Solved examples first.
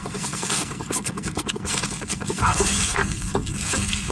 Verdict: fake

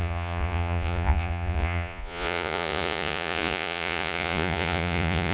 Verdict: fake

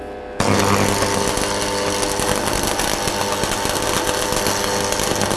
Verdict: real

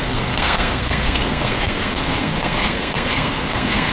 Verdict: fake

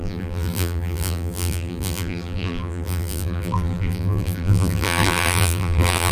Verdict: fake